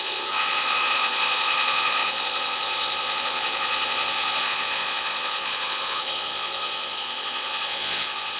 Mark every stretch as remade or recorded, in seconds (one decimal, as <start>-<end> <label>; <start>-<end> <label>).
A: 0.0-8.4 remade